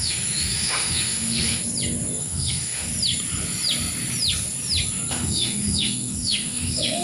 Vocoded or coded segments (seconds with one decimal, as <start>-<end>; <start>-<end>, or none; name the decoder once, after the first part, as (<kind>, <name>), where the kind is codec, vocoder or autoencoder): 0.0-1.6 (autoencoder, DAC-VAE); 2.2-2.9; 5.1-7.0